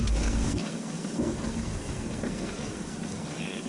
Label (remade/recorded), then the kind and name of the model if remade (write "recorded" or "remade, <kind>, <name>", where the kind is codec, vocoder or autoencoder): remade, codec, SNAC